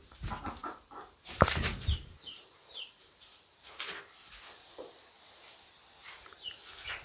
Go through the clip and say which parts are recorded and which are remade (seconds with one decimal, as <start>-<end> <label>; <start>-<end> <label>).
0.0-0.6 recorded; 0.6-4.8 remade; 4.8-6.0 recorded; 6.0-6.6 remade; 6.6-7.0 recorded